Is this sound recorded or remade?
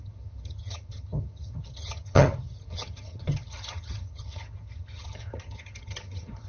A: remade